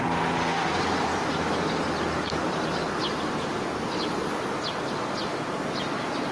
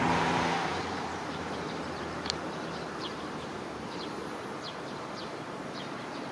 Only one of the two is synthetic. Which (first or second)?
second